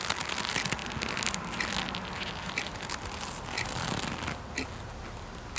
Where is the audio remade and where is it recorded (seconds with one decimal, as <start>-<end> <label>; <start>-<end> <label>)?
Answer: 0.0-5.6 recorded